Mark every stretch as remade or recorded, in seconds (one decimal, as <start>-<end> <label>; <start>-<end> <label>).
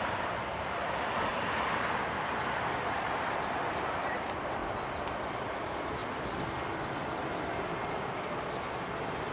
0.0-1.3 remade; 1.3-2.2 recorded; 2.2-4.6 remade; 4.6-5.5 recorded; 5.5-6.0 remade; 6.0-9.3 recorded